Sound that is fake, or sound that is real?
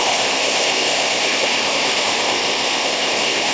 fake